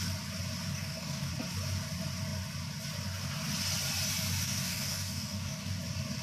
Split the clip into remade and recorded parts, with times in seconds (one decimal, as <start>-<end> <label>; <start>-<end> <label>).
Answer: 0.0-0.7 recorded; 0.7-1.3 remade; 1.3-4.4 recorded; 4.4-5.8 remade; 5.8-6.2 recorded

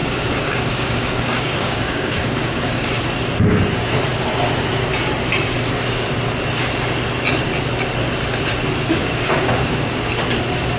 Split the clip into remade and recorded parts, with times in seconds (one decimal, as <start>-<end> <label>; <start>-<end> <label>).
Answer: 0.0-3.0 remade; 3.0-9.0 recorded; 9.0-10.1 remade; 10.1-10.8 recorded